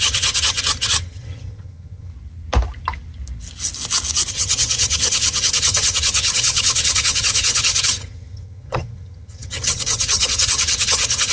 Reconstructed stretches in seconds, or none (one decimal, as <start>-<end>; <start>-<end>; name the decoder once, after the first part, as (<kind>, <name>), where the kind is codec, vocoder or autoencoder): 0.0-2.1 (vocoder, HiFi-GAN); 4.3-11.3